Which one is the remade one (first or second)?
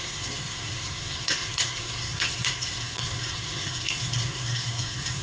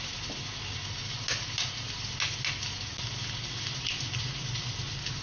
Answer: first